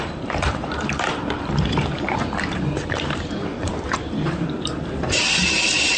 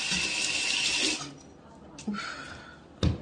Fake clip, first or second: first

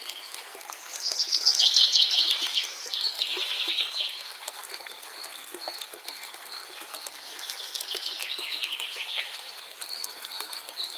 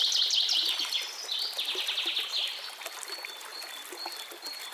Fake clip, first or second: first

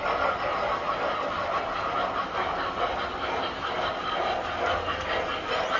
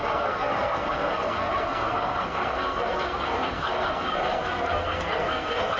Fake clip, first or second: second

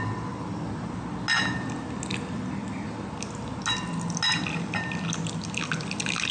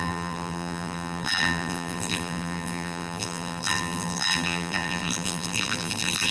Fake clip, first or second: second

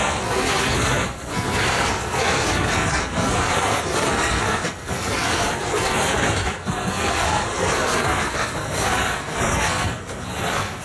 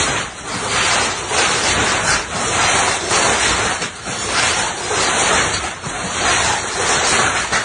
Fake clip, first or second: first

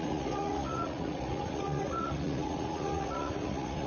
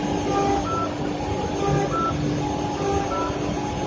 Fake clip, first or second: first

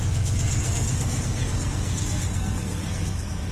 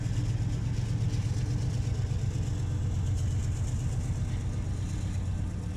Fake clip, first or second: first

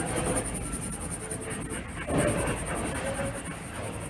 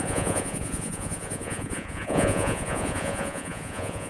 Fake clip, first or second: second